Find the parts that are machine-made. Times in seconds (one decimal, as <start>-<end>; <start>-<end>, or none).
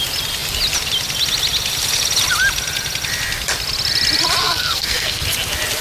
4.4-5.2